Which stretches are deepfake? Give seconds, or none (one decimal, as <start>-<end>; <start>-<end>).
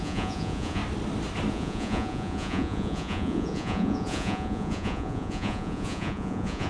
0.0-0.8; 1.5-6.7